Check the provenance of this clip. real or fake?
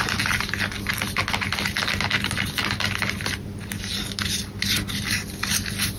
real